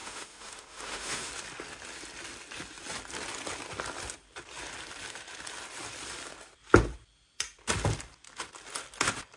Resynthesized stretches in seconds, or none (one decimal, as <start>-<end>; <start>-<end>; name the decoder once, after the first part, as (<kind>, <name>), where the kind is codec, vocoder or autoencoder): 0.0-1.3 (autoencoder, DAC-VAE)